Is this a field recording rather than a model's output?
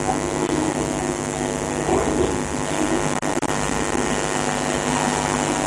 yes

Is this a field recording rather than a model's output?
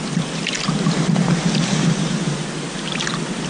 yes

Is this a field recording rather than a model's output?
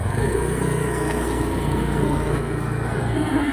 no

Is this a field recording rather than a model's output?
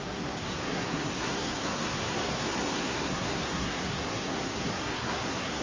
no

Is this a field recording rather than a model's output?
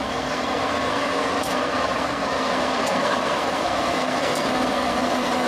no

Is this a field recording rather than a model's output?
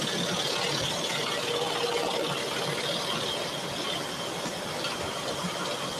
yes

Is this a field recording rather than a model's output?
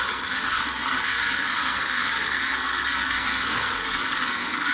no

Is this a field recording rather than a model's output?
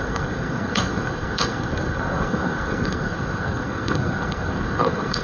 no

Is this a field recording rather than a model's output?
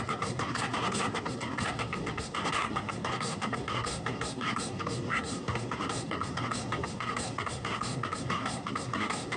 no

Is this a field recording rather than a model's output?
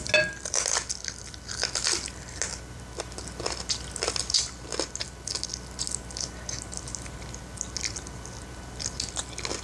yes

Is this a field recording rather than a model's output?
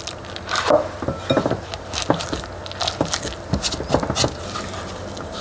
yes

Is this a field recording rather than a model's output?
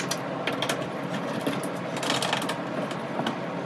yes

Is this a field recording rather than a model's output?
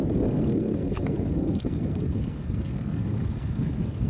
no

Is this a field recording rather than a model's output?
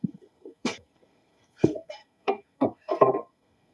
no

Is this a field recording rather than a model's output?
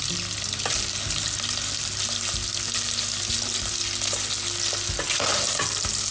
yes